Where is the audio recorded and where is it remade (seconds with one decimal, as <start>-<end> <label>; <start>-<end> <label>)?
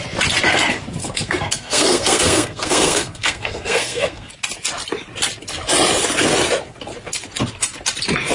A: 0.0-1.0 recorded; 1.0-4.3 remade; 4.3-8.3 recorded